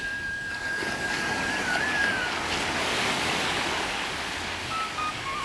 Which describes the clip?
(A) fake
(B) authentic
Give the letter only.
A